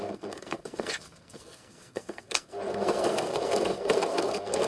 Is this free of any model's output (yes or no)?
no